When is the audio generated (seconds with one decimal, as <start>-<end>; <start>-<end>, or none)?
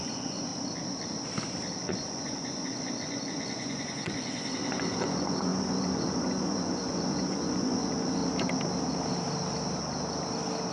0.0-0.5; 1.8-8.2